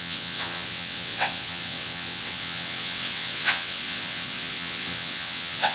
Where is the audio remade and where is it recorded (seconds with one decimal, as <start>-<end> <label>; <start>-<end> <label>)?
0.0-5.7 remade